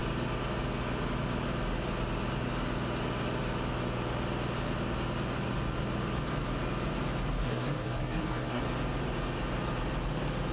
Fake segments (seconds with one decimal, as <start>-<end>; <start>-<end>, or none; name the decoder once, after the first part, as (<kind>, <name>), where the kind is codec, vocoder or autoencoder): 7.4-8.6 (codec, SNAC)